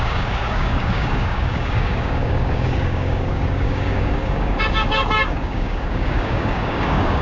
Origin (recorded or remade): remade